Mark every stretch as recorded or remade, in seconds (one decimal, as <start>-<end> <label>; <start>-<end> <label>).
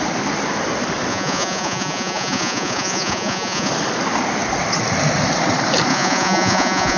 0.0-1.1 recorded; 1.1-3.7 remade; 3.7-5.9 recorded; 5.9-7.0 remade